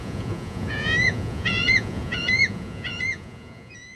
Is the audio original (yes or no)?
no